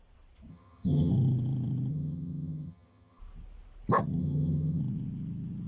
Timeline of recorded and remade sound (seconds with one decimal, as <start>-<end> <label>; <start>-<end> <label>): 0.0-0.5 recorded; 0.5-1.1 remade; 1.1-1.9 recorded; 1.9-3.2 remade; 3.2-4.2 recorded; 4.2-4.8 remade; 4.8-5.7 recorded